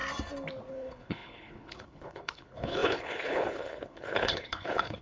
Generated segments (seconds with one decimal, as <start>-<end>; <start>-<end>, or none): 0.7-5.0